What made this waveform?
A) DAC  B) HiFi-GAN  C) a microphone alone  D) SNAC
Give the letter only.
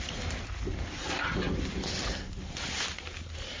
C